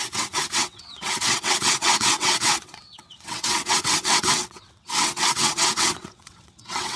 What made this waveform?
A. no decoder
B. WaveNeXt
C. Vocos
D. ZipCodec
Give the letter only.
B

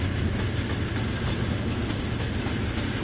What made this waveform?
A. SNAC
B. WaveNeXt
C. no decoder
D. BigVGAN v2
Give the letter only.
C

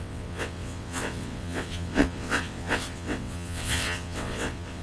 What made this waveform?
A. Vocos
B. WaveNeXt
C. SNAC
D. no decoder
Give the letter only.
B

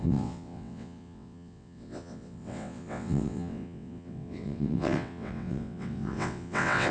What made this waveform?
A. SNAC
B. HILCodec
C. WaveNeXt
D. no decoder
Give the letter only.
C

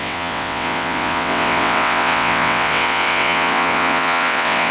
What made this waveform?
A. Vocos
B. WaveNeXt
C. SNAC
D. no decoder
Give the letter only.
B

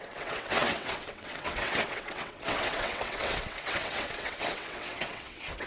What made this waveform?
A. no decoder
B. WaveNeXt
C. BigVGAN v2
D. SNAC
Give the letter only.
B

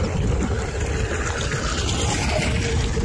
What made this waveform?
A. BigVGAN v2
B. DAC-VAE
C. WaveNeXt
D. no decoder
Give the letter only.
D